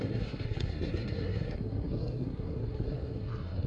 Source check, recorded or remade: remade